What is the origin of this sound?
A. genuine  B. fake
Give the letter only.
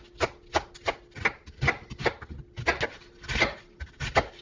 A